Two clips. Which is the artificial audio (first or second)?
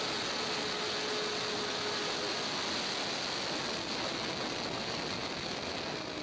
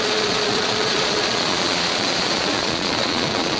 second